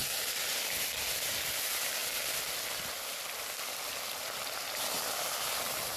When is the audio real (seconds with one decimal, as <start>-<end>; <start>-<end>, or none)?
0.0-6.0